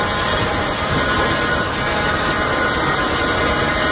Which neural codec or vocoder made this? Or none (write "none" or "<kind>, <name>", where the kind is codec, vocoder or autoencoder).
none